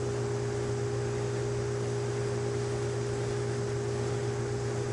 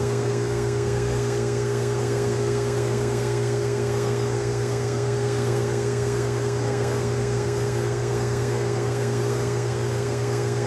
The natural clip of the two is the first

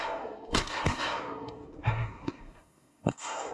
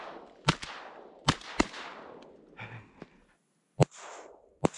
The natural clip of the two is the second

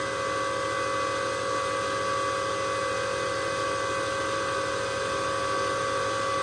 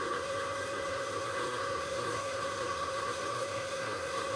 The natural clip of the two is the first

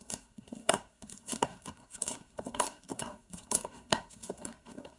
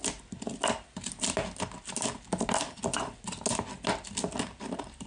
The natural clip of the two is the second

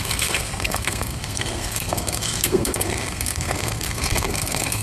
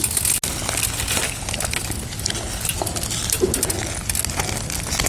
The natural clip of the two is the second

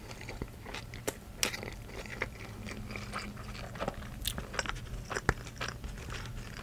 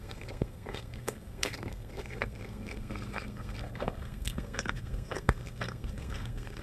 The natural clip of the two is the first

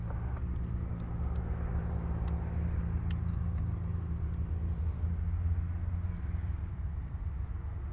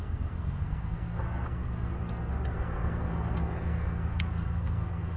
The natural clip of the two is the first